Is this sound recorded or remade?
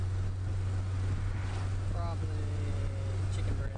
recorded